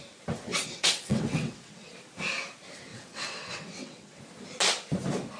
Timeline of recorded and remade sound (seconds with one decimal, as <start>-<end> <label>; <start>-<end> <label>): 0.0-0.5 recorded; 0.5-1.9 remade; 1.9-2.9 recorded; 2.9-4.2 remade; 4.2-5.4 recorded